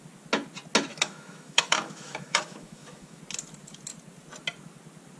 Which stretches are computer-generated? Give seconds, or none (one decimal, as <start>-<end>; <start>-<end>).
0.9-3.2